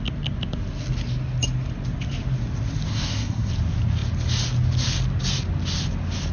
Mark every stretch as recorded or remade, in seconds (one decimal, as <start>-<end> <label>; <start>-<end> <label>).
0.0-2.9 recorded; 2.9-3.5 remade; 3.5-6.3 recorded